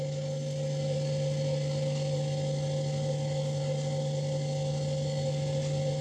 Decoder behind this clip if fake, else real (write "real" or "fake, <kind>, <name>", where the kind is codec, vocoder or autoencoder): real